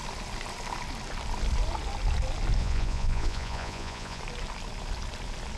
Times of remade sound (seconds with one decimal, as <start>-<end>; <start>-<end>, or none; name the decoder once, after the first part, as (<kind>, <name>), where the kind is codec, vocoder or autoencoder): 2.6-4.2 (vocoder, Vocos)